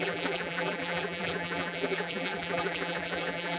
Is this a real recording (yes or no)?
no